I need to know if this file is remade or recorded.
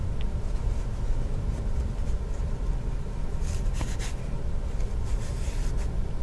recorded